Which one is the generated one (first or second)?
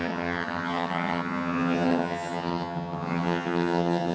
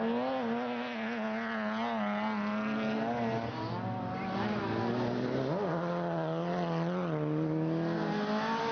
first